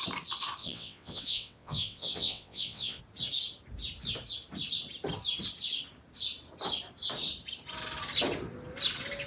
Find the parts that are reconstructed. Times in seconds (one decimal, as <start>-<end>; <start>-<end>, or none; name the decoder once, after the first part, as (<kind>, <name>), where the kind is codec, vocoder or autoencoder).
0.6-3.0 (vocoder, WaveNeXt)